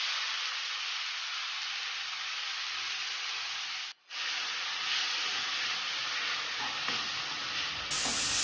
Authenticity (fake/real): real